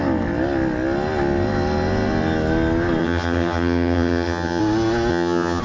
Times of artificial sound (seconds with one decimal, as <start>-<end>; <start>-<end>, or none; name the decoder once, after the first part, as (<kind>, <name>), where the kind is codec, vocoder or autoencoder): 3.0-4.6 (vocoder, HiFi-GAN); 5.1-5.6